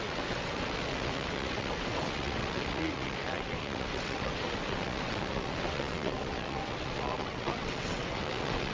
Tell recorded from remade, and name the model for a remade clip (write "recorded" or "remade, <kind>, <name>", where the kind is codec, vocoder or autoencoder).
remade, vocoder, WaveNeXt